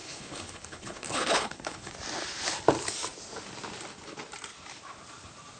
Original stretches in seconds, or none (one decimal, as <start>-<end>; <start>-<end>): 1.9-5.6